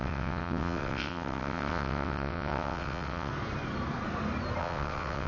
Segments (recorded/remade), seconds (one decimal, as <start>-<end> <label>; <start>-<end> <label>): 0.0-3.3 remade; 3.3-4.6 recorded; 4.6-5.3 remade